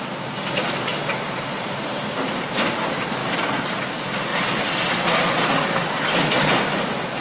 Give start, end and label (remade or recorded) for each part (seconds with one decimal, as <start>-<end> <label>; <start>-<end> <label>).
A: 0.0-0.9 remade; 0.9-1.6 recorded; 1.6-4.3 remade; 4.3-5.1 recorded; 5.1-7.2 remade